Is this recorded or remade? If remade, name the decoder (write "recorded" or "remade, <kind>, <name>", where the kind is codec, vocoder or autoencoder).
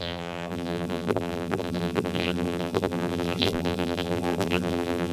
remade, vocoder, BigVGAN v2